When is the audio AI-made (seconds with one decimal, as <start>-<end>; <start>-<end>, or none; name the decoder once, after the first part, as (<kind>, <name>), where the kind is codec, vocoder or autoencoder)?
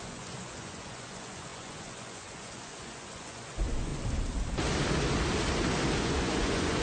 0.0-3.9 (vocoder, Vocos); 6.0-6.8